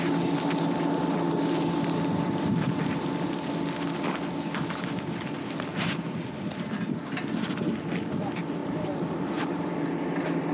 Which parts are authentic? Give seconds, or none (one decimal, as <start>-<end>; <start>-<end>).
0.0-2.5; 3.1-8.6; 9.8-10.5